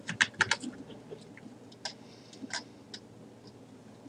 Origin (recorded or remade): recorded